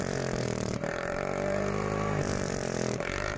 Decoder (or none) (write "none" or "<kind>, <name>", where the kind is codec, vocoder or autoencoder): vocoder, BigVGAN v2